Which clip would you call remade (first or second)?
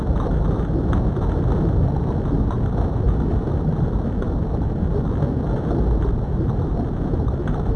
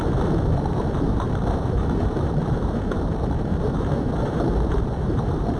second